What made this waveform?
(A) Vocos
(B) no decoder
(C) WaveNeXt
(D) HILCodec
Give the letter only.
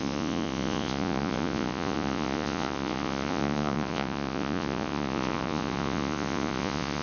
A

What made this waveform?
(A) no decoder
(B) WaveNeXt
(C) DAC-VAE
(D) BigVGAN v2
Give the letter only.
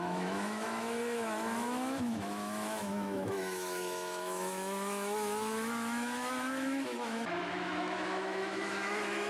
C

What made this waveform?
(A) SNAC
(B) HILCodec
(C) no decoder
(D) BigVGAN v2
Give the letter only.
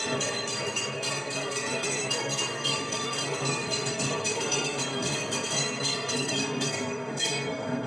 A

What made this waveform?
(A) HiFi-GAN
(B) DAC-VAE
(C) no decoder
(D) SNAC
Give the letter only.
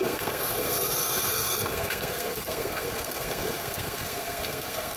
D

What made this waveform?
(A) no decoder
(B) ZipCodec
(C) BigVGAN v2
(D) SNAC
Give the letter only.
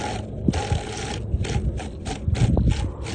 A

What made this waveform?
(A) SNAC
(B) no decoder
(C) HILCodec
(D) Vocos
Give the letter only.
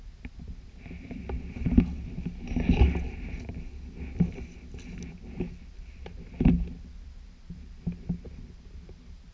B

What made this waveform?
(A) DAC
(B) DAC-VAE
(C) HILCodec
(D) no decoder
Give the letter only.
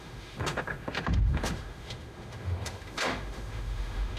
B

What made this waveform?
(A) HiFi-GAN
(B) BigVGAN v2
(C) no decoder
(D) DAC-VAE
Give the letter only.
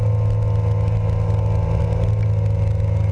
C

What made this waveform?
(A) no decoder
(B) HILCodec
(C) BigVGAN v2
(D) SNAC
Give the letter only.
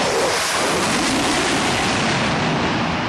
A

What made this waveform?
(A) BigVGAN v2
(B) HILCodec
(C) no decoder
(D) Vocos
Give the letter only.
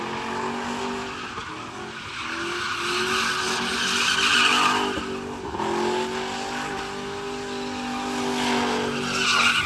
C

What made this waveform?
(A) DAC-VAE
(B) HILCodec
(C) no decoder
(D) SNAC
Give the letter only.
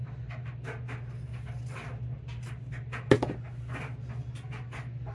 C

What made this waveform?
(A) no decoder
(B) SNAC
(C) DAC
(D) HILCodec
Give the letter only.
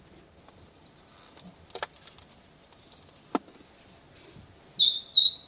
A